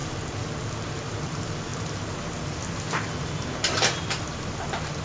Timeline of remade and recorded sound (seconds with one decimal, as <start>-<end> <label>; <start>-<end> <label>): 0.0-5.0 recorded